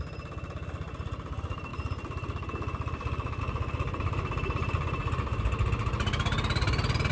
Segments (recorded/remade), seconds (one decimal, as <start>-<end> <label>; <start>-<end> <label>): 0.0-1.7 recorded; 1.7-3.4 remade; 3.4-7.1 recorded